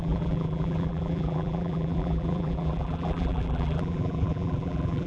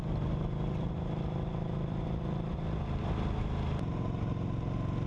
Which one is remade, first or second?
first